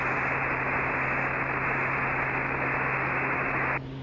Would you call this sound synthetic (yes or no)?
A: no